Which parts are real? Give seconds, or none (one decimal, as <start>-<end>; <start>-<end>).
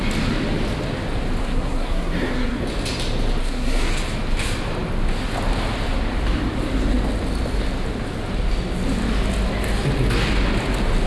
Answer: 0.0-1.4; 2.6-3.4; 3.9-11.1